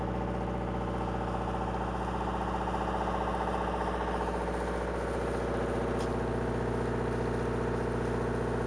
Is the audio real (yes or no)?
yes